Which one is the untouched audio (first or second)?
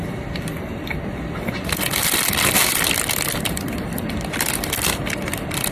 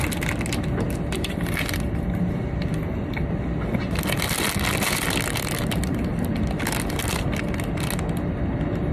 second